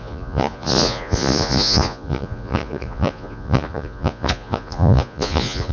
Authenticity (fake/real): fake